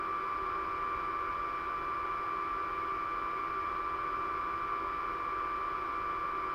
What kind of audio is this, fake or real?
real